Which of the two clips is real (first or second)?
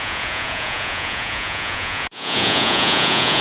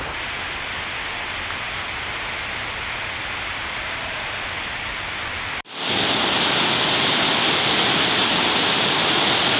second